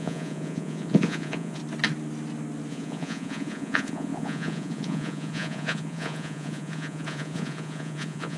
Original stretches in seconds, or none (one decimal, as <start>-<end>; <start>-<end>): 1.6-2.7